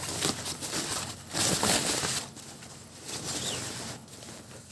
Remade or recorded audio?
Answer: recorded